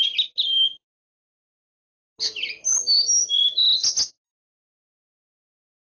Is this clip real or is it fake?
real